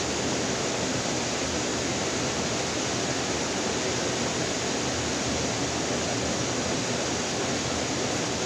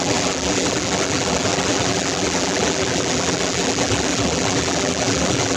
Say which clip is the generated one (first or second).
second